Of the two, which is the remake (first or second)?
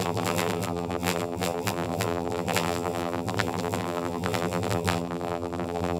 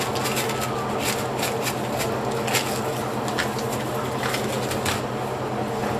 first